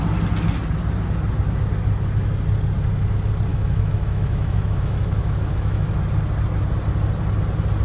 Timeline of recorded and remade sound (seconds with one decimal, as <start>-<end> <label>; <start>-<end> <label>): 0.0-3.5 recorded; 3.5-5.9 remade; 5.9-7.8 recorded